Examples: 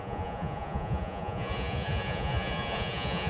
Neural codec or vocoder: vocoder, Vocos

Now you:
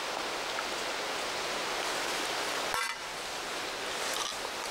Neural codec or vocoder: none